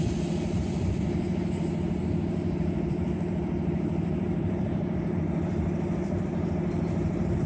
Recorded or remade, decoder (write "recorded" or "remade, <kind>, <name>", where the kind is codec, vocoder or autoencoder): remade, vocoder, BigVGAN v2